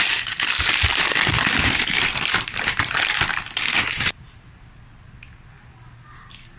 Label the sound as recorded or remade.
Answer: recorded